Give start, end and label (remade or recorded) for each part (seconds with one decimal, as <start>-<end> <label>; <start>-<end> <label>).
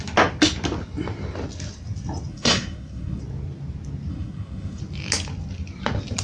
0.0-2.3 recorded; 2.3-3.2 remade; 3.2-4.1 recorded; 4.1-4.8 remade; 4.8-6.2 recorded